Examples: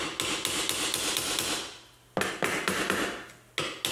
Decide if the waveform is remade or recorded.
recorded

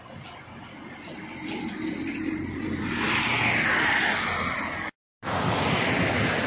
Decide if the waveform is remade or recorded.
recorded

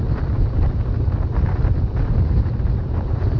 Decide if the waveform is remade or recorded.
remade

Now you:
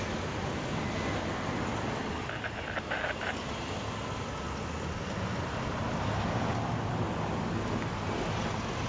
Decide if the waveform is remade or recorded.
recorded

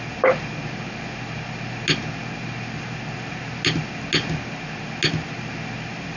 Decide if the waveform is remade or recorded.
recorded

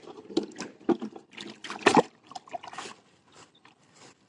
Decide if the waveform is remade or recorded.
recorded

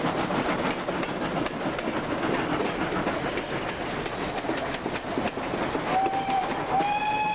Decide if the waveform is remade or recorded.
recorded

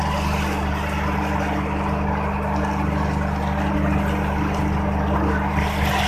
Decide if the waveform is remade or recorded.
recorded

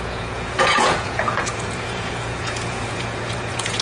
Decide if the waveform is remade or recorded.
remade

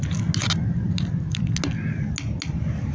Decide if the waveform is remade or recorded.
recorded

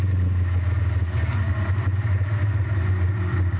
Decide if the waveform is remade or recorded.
recorded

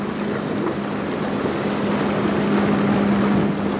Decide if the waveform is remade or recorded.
recorded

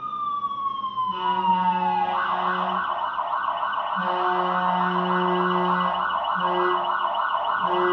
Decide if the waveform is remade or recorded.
recorded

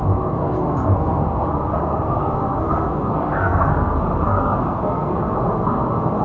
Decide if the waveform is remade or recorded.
remade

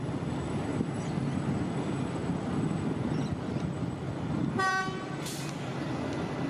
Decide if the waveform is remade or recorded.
remade